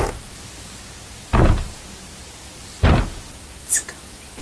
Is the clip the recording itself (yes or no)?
yes